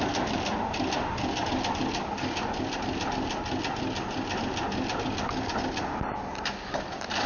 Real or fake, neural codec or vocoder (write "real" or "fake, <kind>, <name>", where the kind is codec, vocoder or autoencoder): real